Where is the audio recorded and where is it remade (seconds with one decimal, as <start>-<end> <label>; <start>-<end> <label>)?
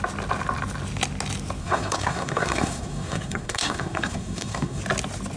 0.0-1.6 recorded; 1.6-4.8 remade; 4.8-5.4 recorded